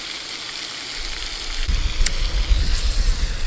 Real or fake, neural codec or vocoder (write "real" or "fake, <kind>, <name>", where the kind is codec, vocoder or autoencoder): real